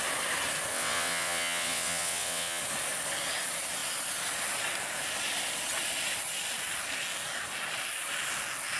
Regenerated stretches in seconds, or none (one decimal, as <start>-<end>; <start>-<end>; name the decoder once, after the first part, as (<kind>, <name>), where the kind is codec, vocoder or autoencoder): 0.7-2.6 (vocoder, WaveNeXt)